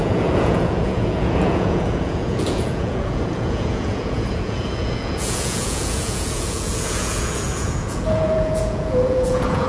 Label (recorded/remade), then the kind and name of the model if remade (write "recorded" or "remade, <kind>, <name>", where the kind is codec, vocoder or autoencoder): remade, vocoder, Vocos